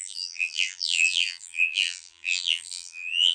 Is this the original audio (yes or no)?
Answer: no